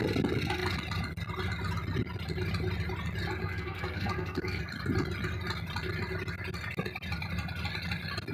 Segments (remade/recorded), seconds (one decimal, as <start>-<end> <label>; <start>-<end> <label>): 0.0-3.4 recorded; 3.4-4.6 remade; 4.6-8.3 recorded